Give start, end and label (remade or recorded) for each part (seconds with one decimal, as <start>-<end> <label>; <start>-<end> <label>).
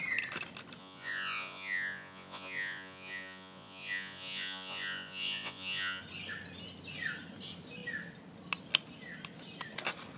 0.0-0.8 recorded; 0.8-6.0 remade; 6.0-10.2 recorded